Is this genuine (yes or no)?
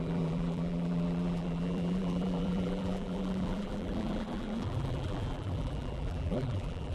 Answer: no